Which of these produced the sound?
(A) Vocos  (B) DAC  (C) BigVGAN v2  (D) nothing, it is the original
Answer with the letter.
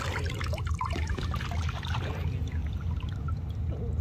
D